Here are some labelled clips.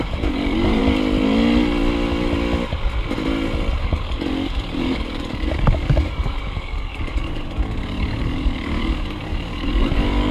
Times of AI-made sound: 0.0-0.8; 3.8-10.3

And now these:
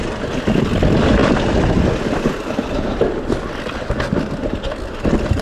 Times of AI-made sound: none